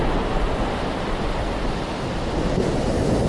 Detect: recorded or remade recorded